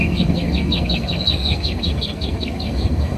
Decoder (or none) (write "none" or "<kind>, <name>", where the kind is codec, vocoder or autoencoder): codec, SNAC